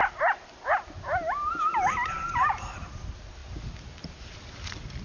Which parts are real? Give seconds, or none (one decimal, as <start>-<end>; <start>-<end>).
0.0-5.0